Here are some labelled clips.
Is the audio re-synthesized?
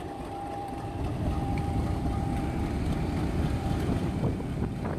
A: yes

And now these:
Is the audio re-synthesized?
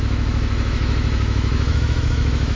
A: yes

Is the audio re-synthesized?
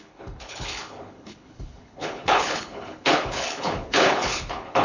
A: yes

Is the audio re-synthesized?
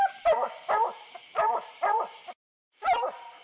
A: yes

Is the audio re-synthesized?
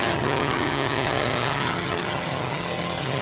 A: yes